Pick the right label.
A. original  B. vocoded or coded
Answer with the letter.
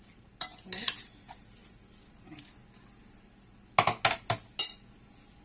A